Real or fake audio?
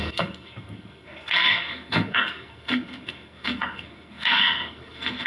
fake